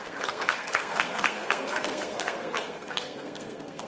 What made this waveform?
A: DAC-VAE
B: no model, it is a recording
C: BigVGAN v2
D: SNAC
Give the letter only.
D